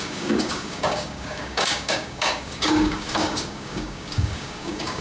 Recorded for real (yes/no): no